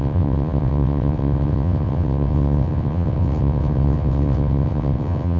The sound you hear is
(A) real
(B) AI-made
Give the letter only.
B